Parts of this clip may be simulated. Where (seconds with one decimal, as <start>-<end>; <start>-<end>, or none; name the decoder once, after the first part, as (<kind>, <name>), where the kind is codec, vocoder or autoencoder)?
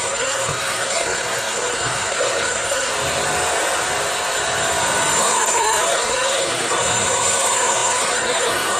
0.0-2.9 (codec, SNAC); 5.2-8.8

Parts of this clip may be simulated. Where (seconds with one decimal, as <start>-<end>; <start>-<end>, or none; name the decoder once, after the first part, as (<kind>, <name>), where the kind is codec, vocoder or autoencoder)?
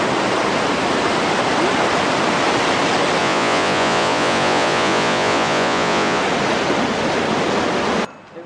3.2-6.2 (vocoder, Vocos)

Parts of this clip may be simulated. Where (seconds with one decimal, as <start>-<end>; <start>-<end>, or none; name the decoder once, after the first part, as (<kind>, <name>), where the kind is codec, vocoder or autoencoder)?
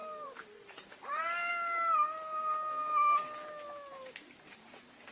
0.0-1.5 (vocoder, BigVGAN v2)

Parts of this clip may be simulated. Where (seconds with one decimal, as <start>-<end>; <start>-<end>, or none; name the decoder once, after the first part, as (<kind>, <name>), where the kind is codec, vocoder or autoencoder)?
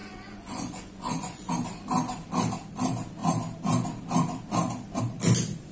0.0-1.5 (vocoder, Vocos)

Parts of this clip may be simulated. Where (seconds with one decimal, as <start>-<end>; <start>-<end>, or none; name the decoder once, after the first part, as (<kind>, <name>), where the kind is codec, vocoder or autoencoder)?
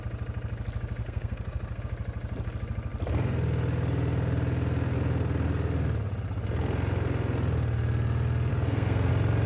1.0-1.8 (codec, SNAC); 8.5-9.1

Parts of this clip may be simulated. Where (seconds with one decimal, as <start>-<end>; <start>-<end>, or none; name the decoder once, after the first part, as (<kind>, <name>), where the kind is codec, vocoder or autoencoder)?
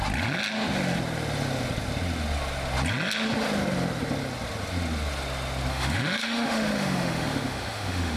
5.7-8.2 (autoencoder, DAC-VAE)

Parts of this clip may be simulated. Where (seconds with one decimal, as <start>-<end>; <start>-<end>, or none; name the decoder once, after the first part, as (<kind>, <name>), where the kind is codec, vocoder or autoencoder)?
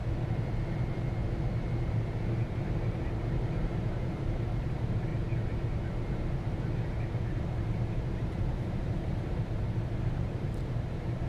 1.8-5.1 (vocoder, BigVGAN v2); 7.1-11.3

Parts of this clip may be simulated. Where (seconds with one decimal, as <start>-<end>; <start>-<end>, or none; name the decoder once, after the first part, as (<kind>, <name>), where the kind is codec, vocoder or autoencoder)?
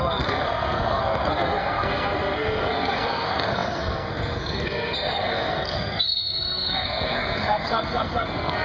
0.0-8.6 (codec, SNAC)